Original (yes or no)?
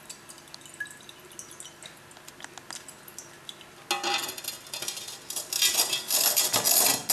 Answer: yes